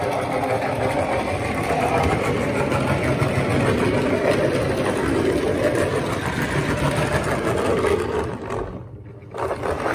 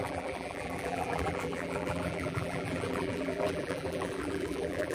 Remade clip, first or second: second